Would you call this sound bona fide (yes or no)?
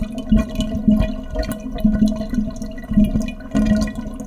yes